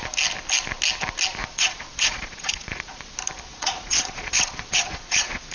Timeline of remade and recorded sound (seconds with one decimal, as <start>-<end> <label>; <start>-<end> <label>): 0.0-1.4 recorded; 1.4-3.0 remade; 3.0-3.5 recorded; 3.5-5.5 remade